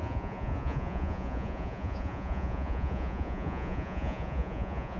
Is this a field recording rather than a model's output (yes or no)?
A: no